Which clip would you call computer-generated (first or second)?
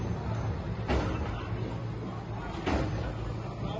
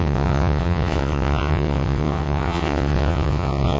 second